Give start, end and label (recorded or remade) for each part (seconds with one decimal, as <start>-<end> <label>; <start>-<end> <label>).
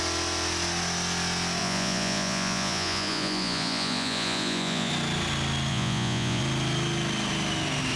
0.0-1.6 recorded; 1.6-4.9 remade; 4.9-5.7 recorded; 5.7-6.4 remade; 6.4-8.0 recorded